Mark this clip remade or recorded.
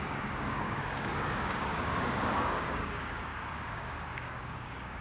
remade